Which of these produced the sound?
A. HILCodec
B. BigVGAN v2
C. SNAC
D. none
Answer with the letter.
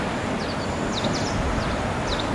D